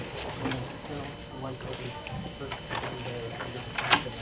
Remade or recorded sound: recorded